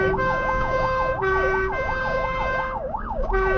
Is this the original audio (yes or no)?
no